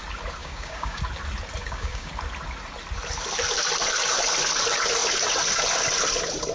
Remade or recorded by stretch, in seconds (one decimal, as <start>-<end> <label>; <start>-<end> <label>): 0.0-0.4 recorded; 0.4-1.0 remade; 1.0-1.6 recorded; 1.6-2.1 remade; 2.1-6.5 recorded